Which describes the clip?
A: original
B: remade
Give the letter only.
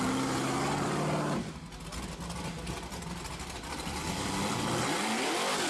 A